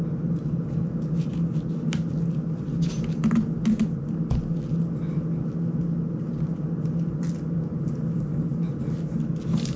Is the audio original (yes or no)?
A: yes